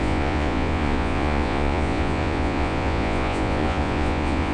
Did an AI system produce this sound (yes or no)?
yes